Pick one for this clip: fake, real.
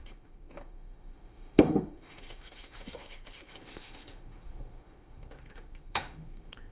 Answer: fake